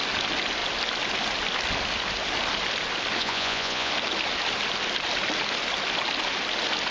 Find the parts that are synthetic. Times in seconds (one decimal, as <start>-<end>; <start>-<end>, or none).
3.2-3.9